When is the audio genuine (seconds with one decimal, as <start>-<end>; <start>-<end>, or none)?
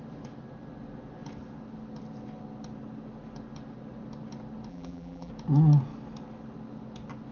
0.0-4.7; 5.3-7.3